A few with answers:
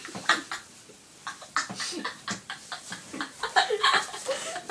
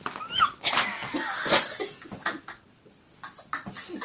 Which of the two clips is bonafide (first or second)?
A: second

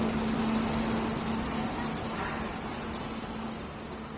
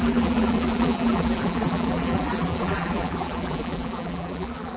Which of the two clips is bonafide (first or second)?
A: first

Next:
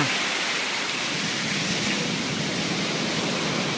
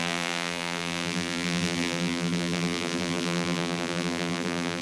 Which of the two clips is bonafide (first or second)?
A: first